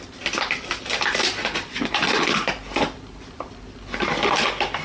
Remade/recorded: recorded